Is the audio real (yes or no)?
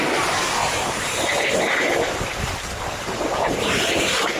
no